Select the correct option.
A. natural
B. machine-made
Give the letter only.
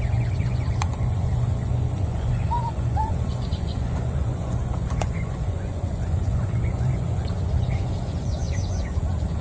B